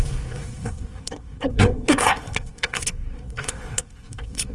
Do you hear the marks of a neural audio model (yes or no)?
yes